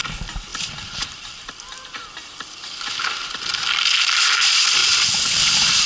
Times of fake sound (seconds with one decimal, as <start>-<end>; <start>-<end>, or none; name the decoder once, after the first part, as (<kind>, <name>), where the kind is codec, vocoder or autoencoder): 0.5-2.0 (vocoder, BigVGAN v2); 4.8-5.4